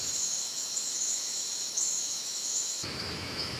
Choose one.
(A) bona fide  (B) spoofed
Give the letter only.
B